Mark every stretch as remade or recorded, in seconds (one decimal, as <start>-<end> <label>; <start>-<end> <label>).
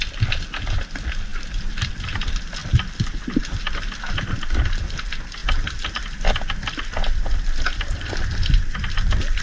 0.0-1.3 recorded; 1.3-1.9 remade; 1.9-2.6 recorded; 2.6-3.4 remade; 3.4-5.4 recorded; 5.4-6.4 remade; 6.4-9.4 recorded